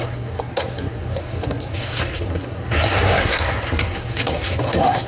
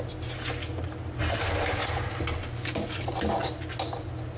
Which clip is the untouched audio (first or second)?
second